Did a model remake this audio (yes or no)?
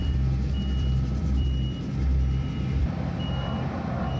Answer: yes